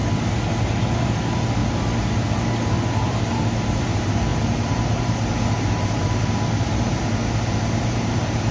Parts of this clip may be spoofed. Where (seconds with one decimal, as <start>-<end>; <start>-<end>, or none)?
0.6-1.6; 2.9-8.5